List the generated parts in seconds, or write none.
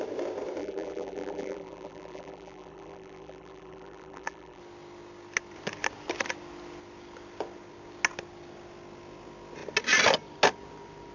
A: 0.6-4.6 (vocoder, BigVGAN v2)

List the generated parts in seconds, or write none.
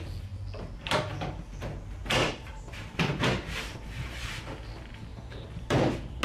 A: 2.0-4.5 (vocoder, BigVGAN v2); 5.1-6.2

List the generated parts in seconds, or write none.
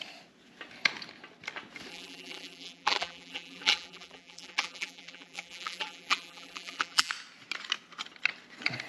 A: 1.9-7.1 (vocoder, BigVGAN v2)